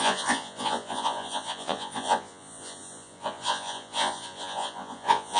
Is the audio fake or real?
fake